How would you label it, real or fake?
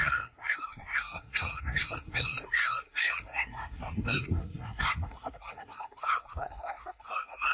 fake